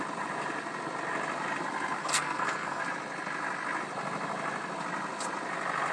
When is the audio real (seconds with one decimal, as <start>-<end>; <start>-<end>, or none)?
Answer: 0.0-2.0; 2.8-5.9